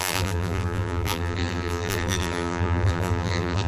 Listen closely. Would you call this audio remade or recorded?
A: remade